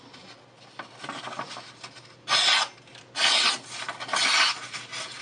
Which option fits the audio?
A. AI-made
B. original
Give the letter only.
B